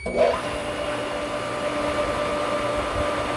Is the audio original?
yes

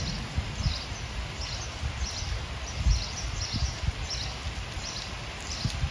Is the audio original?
yes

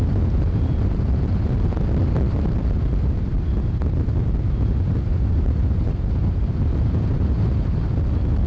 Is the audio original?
no